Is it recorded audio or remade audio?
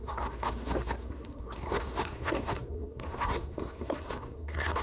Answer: remade